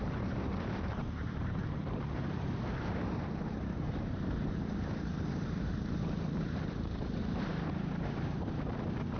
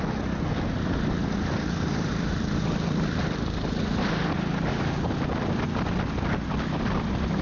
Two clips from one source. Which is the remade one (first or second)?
first